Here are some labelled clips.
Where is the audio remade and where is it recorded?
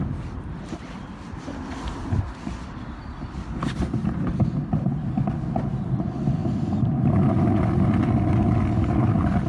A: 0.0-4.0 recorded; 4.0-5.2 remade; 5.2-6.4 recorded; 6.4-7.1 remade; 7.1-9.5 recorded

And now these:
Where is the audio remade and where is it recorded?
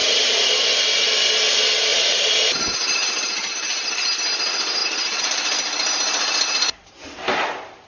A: 0.0-0.7 remade; 0.7-1.9 recorded; 1.9-2.6 remade; 2.6-3.0 recorded; 3.0-3.5 remade; 3.5-4.8 recorded; 4.8-6.9 remade; 6.9-7.9 recorded